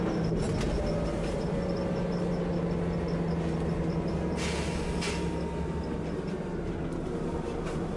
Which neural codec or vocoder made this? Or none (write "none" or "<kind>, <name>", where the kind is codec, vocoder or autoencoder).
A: none